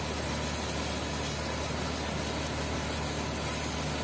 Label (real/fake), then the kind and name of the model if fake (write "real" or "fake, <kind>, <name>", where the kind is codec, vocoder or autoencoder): real